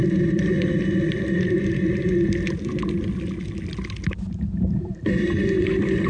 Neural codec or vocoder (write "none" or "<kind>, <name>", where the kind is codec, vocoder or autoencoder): none